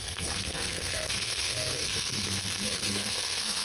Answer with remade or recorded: remade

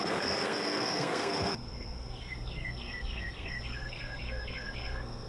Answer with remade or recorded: remade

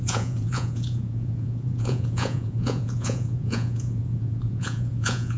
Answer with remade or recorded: remade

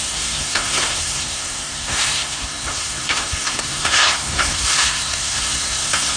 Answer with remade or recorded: remade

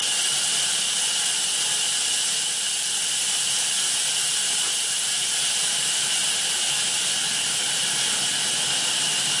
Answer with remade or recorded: recorded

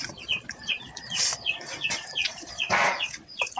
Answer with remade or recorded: remade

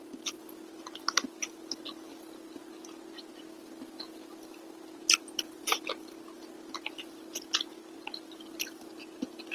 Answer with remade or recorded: recorded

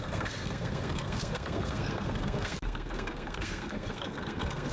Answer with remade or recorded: remade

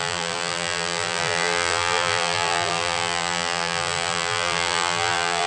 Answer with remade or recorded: remade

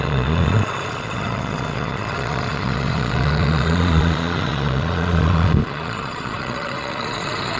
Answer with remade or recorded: remade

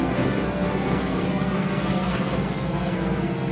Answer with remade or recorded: remade